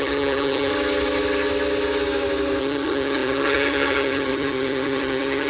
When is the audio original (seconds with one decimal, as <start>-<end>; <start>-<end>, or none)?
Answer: 0.7-2.6